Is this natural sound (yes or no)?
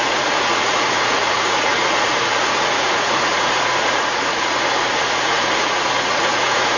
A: no